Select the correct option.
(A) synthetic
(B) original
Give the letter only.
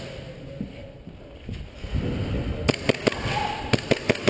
B